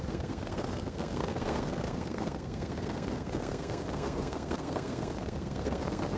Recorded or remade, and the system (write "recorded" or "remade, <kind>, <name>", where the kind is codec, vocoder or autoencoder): remade, codec, SNAC